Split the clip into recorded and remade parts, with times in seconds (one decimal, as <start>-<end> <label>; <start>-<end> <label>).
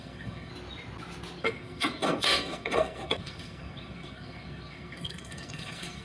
0.0-0.5 remade; 0.5-1.4 recorded; 1.4-6.0 remade